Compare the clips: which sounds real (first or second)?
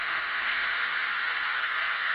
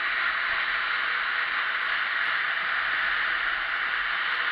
second